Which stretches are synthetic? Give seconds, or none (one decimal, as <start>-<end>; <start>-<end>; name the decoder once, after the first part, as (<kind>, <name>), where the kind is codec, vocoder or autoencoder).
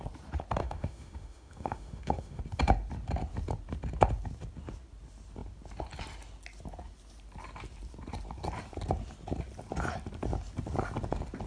0.6-2.4 (autoencoder, DAC-VAE)